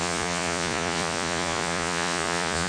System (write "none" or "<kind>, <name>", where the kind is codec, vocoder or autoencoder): vocoder, Vocos